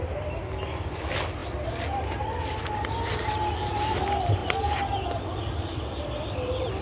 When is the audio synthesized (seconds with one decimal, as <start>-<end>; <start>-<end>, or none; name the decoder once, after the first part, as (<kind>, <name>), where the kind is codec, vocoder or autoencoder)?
none